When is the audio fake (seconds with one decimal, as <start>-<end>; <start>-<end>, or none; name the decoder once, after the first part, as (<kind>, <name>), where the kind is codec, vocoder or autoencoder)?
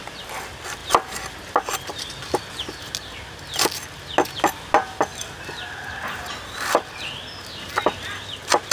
none